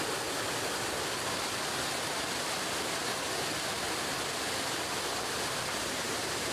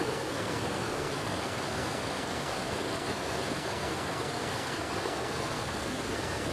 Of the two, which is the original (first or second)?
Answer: first